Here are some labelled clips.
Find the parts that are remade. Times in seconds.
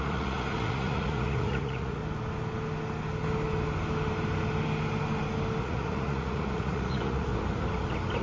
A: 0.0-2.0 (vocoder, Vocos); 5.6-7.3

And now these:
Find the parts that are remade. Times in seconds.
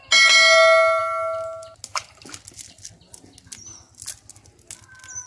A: none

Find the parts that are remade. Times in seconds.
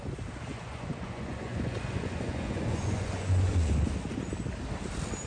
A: 0.5-3.7 (vocoder, Vocos)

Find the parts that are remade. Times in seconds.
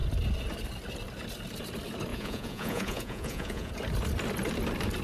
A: 2.1-3.7 (vocoder, Vocos)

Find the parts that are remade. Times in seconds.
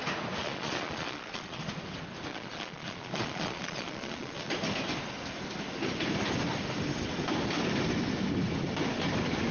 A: 0.4-1.6 (vocoder, Vocos); 2.3-4.5